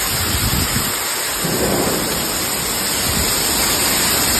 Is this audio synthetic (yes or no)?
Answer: no